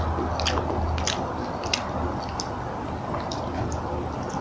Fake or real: real